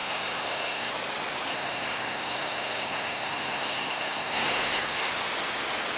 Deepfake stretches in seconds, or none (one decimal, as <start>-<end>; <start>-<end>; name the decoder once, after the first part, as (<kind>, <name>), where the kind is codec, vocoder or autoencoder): 0.0-0.9 (codec, SNAC); 1.5-5.1

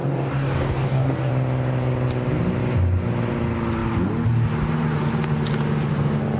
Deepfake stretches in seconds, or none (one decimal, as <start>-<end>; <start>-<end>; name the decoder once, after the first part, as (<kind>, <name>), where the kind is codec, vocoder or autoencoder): 0.0-1.3 (codec, DAC)

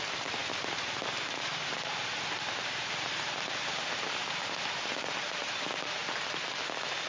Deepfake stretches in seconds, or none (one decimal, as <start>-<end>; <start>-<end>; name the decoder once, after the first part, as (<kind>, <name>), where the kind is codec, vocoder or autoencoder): 0.4-1.7 (vocoder, BigVGAN v2); 2.1-5.5

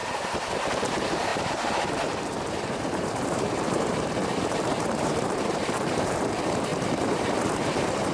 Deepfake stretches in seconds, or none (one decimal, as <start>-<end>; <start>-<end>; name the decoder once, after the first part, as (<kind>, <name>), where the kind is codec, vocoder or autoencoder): 0.0-8.1 (vocoder, BigVGAN v2)

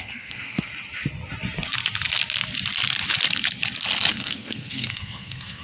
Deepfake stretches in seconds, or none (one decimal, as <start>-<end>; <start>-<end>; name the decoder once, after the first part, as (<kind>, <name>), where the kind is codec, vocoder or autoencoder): 0.0-0.7 (codec, SNAC); 4.1-5.6

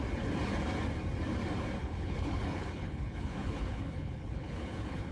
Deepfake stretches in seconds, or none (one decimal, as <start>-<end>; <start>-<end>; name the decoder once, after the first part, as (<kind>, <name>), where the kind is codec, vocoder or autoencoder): 1.8-5.1 (codec, HILCodec)

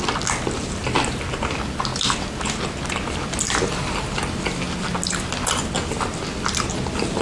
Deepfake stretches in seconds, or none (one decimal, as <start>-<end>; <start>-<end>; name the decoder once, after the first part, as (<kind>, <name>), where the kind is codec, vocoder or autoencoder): none